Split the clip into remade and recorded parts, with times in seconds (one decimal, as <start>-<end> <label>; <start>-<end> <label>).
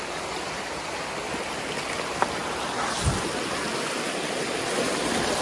0.0-5.4 recorded